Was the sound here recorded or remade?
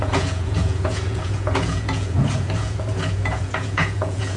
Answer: remade